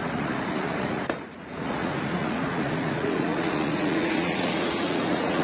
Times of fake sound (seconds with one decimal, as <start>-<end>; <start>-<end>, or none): 0.0-5.4